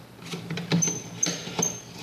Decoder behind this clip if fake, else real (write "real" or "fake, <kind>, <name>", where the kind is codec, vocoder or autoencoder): fake, vocoder, BigVGAN v2